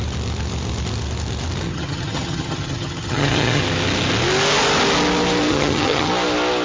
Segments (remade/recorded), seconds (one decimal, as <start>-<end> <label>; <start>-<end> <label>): 0.0-1.7 recorded; 1.7-3.6 remade; 3.6-5.5 recorded; 5.5-6.1 remade; 6.1-6.6 recorded

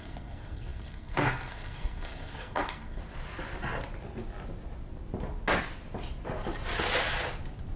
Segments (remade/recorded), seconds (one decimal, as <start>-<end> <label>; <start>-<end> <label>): 0.0-3.0 remade; 3.0-7.8 recorded

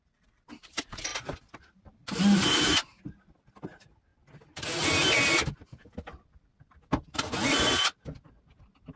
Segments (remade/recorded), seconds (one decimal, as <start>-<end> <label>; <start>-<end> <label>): 0.0-9.0 recorded

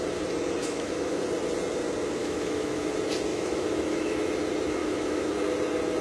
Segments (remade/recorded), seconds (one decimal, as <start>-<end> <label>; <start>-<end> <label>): 0.0-0.6 recorded; 0.6-1.2 remade; 1.2-2.2 recorded; 2.2-2.9 remade; 2.9-3.3 recorded; 3.3-4.3 remade; 4.3-4.8 recorded; 4.8-5.3 remade; 5.3-6.0 recorded

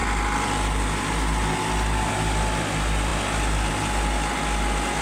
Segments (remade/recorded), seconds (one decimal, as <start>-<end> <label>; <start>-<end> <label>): 0.0-5.0 recorded